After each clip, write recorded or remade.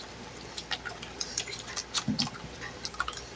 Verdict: recorded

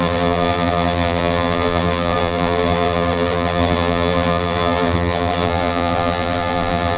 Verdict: remade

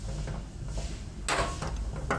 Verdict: recorded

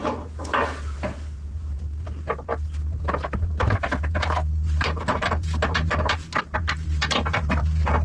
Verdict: remade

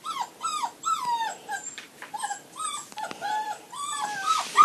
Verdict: recorded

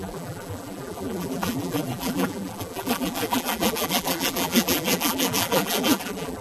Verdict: remade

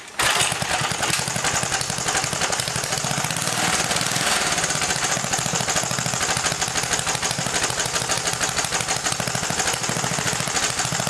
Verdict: recorded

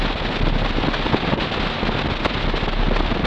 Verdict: recorded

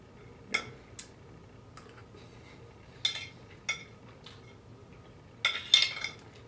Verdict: recorded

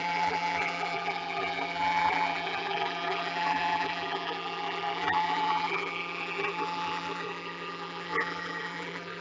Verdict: remade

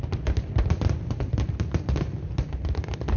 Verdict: recorded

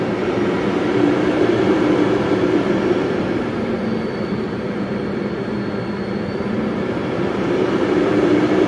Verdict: remade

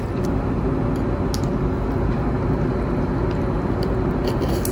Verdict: recorded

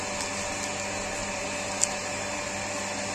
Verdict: recorded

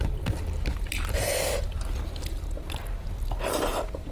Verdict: recorded